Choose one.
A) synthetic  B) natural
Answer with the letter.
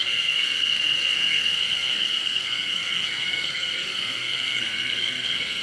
A